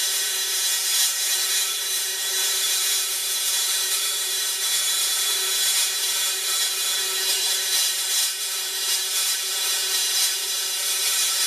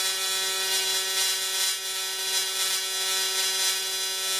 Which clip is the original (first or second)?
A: second